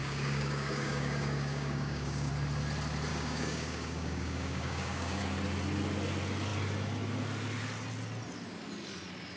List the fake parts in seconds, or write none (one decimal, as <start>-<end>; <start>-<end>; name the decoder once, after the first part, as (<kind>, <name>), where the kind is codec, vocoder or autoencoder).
0.0-2.3 (codec, DAC); 3.1-5.2